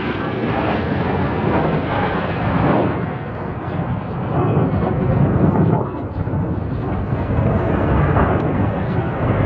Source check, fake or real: fake